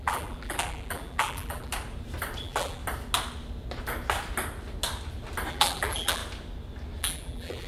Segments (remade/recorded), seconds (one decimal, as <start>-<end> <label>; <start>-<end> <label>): 0.0-1.7 remade; 1.7-2.4 recorded; 2.4-2.8 remade; 2.8-5.5 recorded; 5.5-6.2 remade; 6.2-7.0 recorded; 7.0-7.7 remade